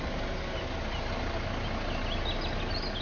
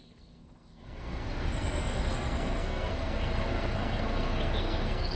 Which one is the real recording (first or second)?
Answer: first